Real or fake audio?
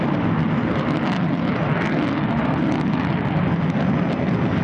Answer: real